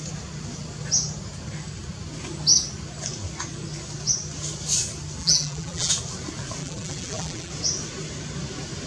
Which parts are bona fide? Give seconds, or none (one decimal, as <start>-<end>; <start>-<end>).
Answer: 0.0-5.2; 5.9-6.6; 7.5-8.9